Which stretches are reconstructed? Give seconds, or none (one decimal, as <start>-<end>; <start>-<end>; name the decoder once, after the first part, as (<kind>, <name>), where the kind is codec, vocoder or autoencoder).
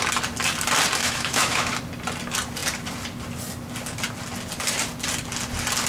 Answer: 1.0-1.7 (autoencoder, DAC-VAE)